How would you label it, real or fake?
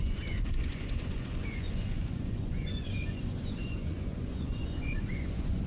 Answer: fake